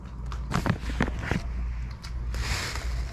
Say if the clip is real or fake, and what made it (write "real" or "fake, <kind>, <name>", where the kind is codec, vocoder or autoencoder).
real